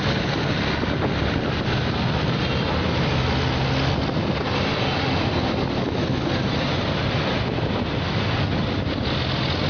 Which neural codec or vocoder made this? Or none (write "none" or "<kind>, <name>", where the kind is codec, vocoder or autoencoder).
none